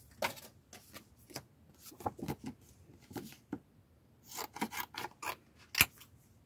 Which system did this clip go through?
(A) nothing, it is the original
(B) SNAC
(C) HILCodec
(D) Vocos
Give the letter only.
A